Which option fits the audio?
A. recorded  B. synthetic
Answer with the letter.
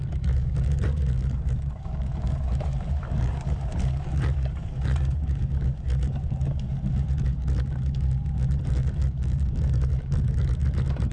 B